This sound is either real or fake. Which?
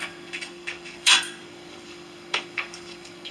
fake